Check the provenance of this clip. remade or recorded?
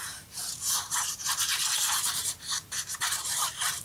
remade